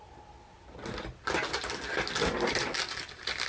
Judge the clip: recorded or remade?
recorded